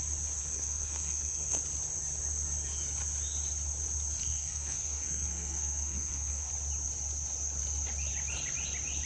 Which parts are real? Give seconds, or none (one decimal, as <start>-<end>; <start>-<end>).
0.0-0.4; 1.6-4.2; 6.5-9.1